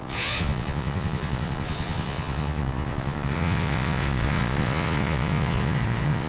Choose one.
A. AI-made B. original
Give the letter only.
A